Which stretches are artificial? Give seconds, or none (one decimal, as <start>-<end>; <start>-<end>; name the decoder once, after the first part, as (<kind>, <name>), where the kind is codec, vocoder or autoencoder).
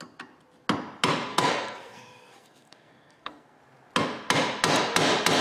1.3-3.6 (codec, SNAC)